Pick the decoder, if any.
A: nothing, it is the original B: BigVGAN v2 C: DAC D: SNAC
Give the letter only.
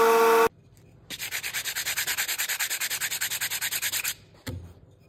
A